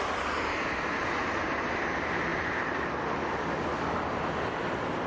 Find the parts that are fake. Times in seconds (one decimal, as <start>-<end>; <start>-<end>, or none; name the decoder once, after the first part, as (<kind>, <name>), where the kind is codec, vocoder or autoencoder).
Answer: none